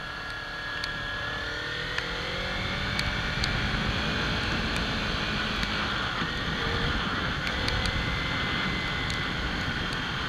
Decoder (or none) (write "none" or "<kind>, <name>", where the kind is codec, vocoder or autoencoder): none